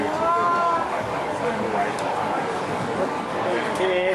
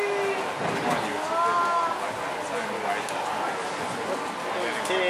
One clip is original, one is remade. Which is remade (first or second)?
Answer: first